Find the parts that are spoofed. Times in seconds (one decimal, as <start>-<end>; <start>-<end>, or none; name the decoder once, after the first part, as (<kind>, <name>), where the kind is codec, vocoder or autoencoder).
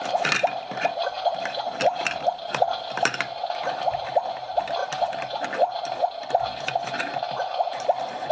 none